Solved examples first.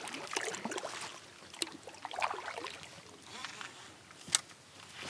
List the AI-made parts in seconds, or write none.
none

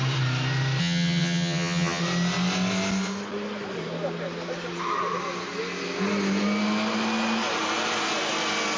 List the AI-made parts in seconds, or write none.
0.8-2.0 (vocoder, HiFi-GAN)

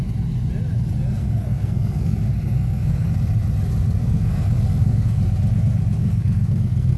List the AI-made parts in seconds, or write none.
1.2-3.1 (codec, SNAC); 4.0-5.2; 6.0-7.0

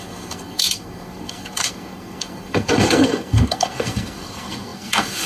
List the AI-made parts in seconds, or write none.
0.0-5.3 (codec, SNAC)

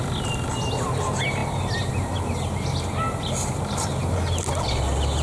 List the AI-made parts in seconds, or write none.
none

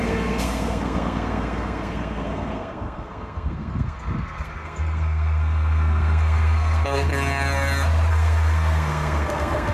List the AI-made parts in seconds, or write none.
0.0-7.1 (codec, SNAC); 8.1-9.7